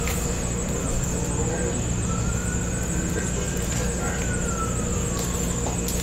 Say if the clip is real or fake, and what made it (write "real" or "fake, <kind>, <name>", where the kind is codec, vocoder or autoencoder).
real